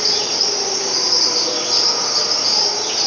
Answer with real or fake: real